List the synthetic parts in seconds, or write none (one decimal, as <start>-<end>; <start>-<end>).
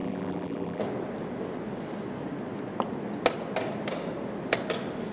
0.0-0.8